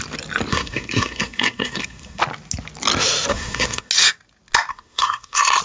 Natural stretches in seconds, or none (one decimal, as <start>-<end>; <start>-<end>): 0.0-0.5; 2.2-3.3; 3.9-4.7